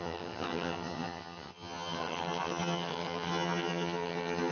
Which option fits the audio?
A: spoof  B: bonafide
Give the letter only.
A